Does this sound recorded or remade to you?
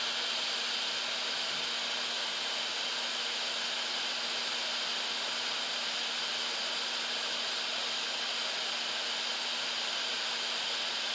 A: recorded